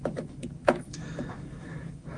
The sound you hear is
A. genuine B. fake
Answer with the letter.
B